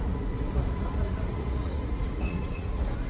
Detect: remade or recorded remade